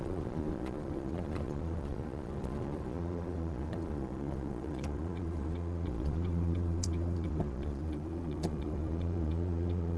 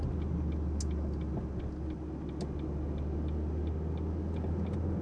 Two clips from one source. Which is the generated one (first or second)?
first